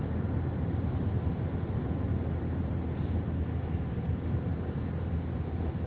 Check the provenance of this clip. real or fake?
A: real